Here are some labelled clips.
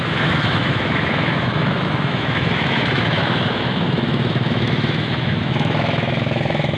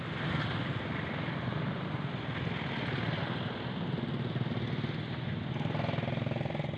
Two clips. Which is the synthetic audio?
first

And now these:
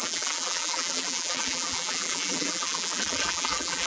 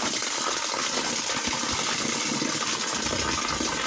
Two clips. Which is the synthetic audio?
first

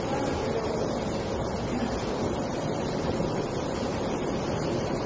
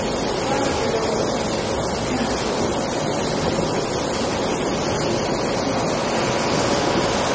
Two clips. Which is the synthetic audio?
first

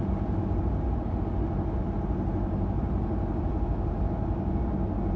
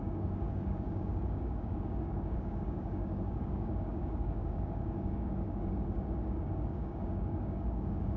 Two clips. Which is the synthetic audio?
second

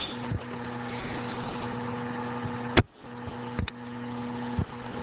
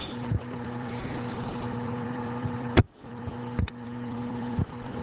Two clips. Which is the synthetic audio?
second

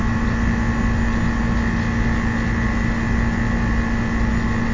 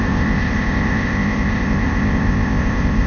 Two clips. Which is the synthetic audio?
second